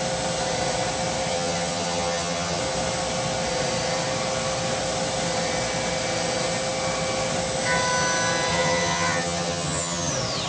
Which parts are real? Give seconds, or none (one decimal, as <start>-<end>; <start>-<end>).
0.0-1.3; 2.6-8.5; 10.1-10.5